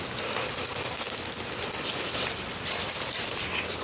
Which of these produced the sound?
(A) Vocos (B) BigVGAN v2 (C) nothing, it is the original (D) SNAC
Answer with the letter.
C